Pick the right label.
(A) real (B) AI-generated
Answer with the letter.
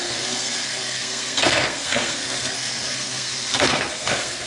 B